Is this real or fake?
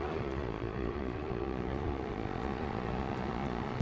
fake